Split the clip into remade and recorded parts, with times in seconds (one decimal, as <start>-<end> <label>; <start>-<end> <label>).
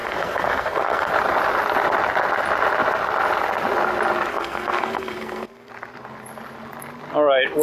0.0-1.1 remade; 1.1-4.3 recorded; 4.3-5.7 remade; 5.7-7.6 recorded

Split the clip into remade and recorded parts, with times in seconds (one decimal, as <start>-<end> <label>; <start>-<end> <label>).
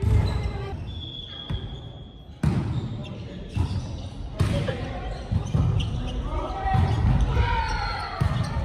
0.0-8.6 recorded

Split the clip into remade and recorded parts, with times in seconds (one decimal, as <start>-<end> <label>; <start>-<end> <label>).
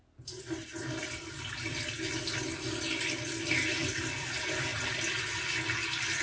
0.0-6.2 recorded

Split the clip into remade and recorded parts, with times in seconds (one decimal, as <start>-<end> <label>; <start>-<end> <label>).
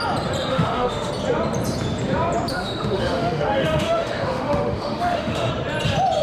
0.0-0.5 recorded; 0.5-1.1 remade; 1.1-2.5 recorded; 2.5-5.5 remade; 5.5-6.2 recorded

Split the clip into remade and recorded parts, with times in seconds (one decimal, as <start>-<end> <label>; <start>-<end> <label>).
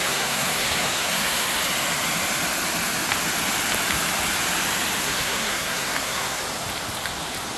0.0-1.6 remade; 1.6-5.0 recorded; 5.0-6.4 remade; 6.4-7.6 recorded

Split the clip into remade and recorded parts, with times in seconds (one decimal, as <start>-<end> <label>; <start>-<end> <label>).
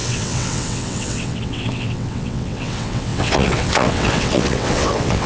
0.0-5.3 remade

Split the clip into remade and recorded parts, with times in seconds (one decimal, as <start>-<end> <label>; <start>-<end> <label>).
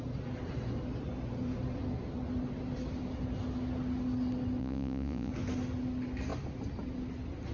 0.0-4.6 recorded; 4.6-5.3 remade; 5.3-7.5 recorded